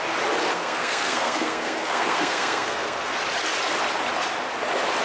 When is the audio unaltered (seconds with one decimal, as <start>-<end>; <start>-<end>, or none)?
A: 0.0-0.5; 3.2-5.0